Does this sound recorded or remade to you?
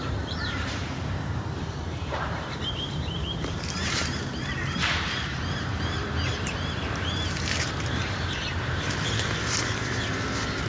remade